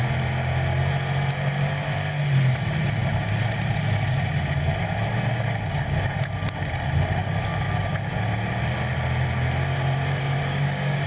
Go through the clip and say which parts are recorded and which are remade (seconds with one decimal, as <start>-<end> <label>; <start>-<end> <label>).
0.0-7.2 recorded; 7.2-7.7 remade; 7.7-10.4 recorded; 10.4-11.1 remade